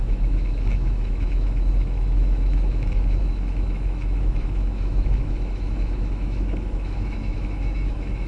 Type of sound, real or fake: fake